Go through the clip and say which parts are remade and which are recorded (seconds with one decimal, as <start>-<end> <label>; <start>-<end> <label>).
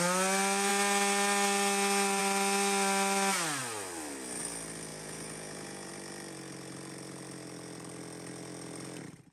0.0-4.9 recorded; 4.9-5.9 remade; 5.9-9.3 recorded